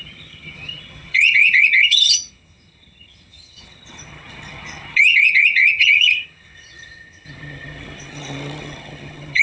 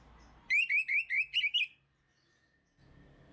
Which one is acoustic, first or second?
second